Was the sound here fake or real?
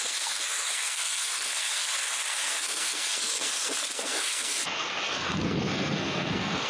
fake